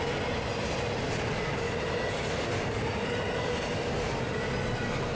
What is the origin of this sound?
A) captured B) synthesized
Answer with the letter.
A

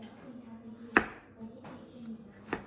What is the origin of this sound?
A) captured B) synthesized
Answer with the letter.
A